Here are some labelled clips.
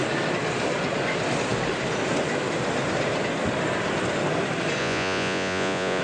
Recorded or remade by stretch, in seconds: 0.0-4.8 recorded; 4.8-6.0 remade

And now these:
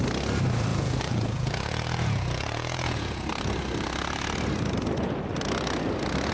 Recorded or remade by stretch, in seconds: 0.0-0.7 recorded; 0.7-3.3 remade; 3.3-6.3 recorded

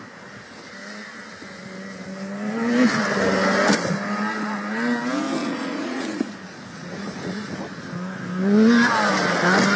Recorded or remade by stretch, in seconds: 0.0-5.4 recorded; 5.4-7.9 remade; 7.9-9.8 recorded

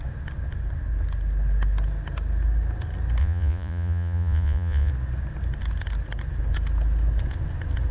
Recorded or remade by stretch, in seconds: 0.0-3.2 recorded; 3.2-4.9 remade; 4.9-7.9 recorded